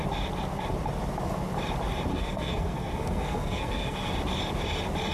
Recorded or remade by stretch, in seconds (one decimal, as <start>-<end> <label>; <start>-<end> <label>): 0.0-2.1 recorded; 2.1-4.1 remade; 4.1-5.1 recorded